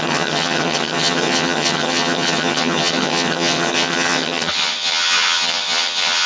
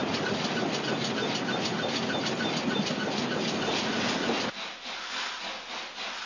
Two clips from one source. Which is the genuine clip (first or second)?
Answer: second